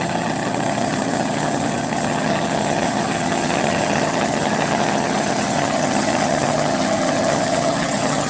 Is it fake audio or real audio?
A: fake